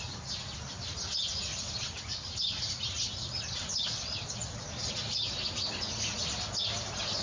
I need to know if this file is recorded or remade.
recorded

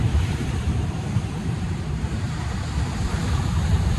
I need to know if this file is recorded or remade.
remade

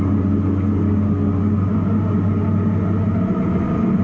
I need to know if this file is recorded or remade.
recorded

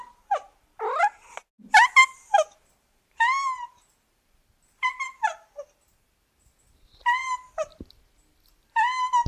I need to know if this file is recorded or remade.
recorded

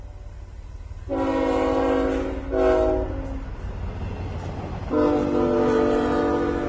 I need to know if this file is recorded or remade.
recorded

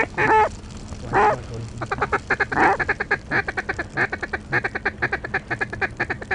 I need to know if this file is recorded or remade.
recorded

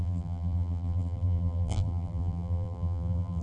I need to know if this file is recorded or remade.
remade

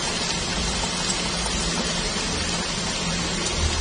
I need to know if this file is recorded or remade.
recorded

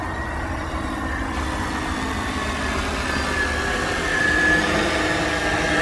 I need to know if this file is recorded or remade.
recorded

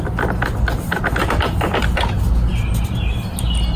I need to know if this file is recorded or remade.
recorded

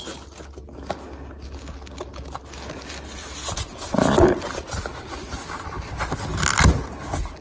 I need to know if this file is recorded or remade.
recorded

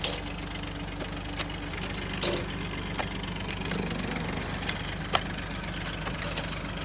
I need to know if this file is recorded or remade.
recorded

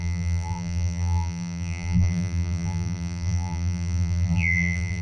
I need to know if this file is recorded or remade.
remade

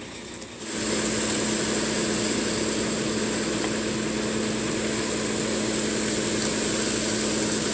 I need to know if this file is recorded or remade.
recorded